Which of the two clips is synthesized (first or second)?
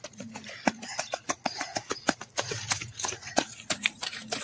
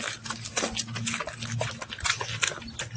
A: first